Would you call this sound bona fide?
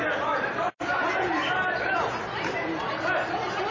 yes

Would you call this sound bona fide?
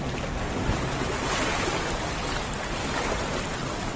yes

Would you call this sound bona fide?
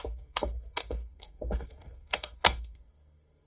no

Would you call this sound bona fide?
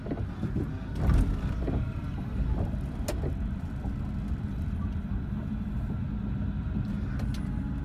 yes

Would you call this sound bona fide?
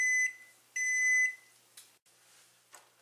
yes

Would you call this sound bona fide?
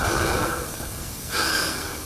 no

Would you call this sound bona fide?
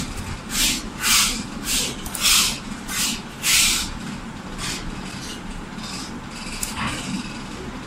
yes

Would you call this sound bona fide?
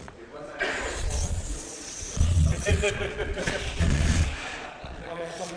no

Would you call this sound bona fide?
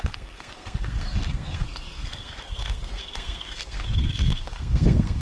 no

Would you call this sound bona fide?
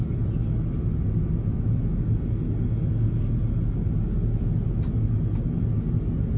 yes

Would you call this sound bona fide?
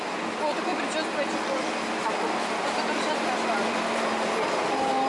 no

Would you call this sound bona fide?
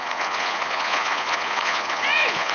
no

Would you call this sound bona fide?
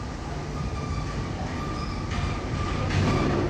yes